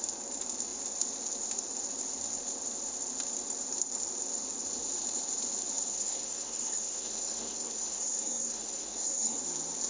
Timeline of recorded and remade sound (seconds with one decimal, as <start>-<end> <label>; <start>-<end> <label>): 0.0-5.9 recorded; 5.9-9.4 remade; 9.4-9.9 recorded